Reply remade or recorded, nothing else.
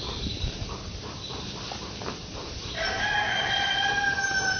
recorded